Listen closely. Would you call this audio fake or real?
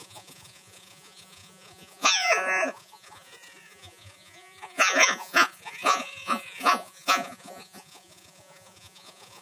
fake